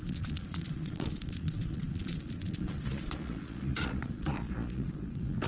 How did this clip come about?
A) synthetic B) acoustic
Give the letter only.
A